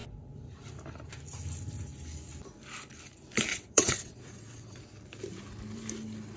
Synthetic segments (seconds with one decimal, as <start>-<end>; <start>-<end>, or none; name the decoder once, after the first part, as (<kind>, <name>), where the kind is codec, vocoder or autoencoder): 3.5-4.8 (vocoder, WaveNeXt)